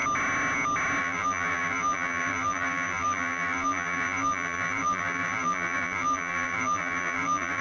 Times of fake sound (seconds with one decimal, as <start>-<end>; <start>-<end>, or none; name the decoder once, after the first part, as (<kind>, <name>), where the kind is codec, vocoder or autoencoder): 1.0-7.6 (vocoder, BigVGAN v2)